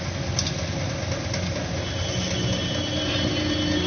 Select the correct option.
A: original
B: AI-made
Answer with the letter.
A